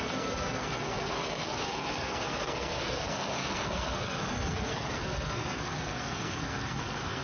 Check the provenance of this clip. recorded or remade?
remade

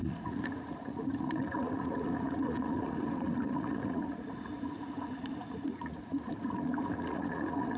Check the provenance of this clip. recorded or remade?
remade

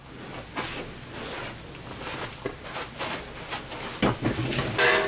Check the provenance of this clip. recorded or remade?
recorded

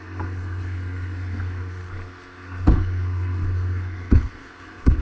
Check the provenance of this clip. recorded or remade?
remade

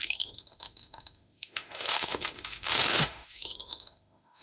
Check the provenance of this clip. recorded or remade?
remade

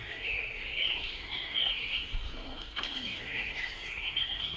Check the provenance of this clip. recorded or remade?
remade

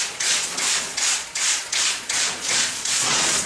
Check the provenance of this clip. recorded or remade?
remade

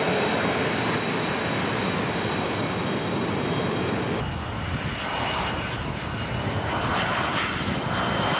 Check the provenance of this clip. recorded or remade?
recorded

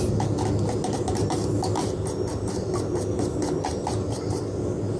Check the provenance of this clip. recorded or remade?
recorded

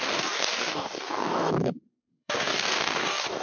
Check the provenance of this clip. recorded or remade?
remade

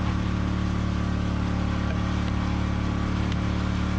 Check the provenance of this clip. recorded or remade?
recorded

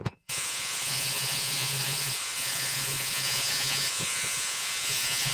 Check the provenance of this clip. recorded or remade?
remade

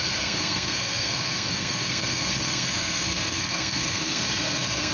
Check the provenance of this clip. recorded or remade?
remade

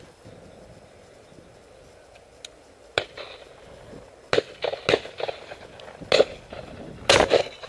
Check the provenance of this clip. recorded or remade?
recorded